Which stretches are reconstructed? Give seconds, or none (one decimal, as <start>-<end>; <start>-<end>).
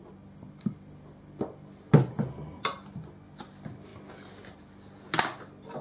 none